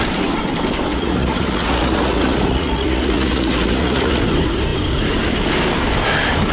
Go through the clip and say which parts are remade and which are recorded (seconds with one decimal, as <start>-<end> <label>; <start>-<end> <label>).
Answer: 0.0-0.9 recorded; 0.9-4.2 remade; 4.2-6.5 recorded